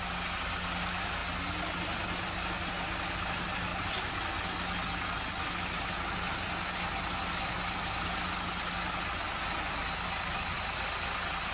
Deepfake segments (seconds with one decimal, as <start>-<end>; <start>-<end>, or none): none